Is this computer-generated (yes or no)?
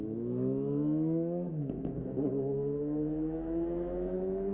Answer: yes